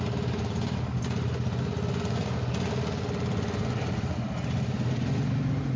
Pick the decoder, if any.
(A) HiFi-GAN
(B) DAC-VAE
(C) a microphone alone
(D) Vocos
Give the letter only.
C